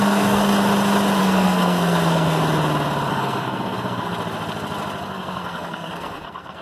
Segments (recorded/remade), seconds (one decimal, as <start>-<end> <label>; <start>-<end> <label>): 0.0-0.5 remade; 0.5-1.2 recorded; 1.2-2.4 remade; 2.4-3.1 recorded; 3.1-4.1 remade; 4.1-5.0 recorded; 5.0-6.6 remade